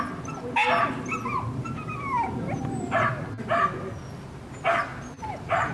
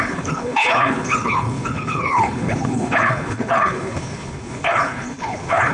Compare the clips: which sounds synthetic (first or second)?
second